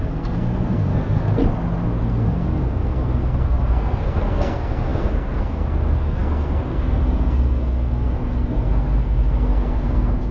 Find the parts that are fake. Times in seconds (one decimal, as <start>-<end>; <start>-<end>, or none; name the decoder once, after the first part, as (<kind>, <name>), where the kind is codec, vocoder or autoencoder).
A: 0.0-1.4 (codec, SNAC); 2.0-10.3